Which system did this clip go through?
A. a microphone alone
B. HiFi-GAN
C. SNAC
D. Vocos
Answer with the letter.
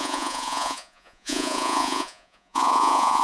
D